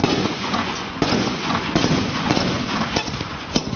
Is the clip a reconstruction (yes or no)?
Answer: yes